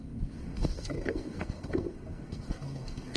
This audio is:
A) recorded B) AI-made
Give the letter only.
B